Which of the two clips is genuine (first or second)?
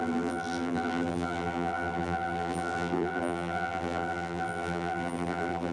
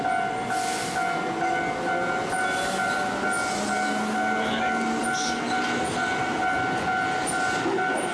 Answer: second